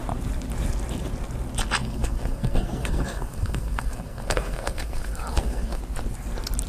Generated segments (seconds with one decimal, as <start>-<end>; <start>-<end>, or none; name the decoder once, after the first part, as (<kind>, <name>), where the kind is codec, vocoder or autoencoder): 1.8-5.8 (codec, SNAC)